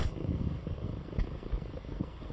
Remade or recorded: remade